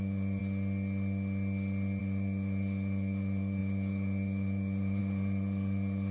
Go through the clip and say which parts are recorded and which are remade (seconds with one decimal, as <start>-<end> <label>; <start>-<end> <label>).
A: 0.0-0.4 remade; 0.4-2.0 recorded; 2.0-6.1 remade